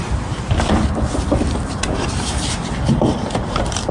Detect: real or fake fake